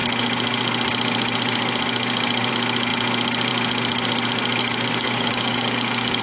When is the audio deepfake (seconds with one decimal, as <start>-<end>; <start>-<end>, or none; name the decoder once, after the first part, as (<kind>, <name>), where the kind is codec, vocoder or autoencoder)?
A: 4.6-6.2 (codec, DAC)